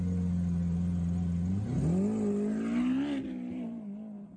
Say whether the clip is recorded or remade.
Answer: recorded